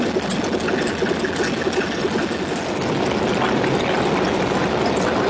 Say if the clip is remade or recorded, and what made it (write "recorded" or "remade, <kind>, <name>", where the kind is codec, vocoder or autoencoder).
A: recorded